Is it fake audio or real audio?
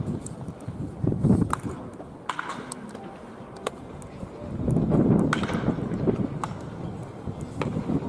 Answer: real